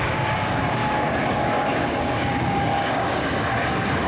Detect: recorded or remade remade